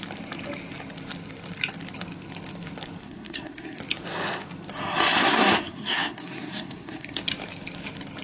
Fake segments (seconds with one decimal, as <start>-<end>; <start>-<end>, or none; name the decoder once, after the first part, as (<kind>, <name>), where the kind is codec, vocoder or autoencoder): 3.0-3.8 (codec, SNAC); 5.2-7.2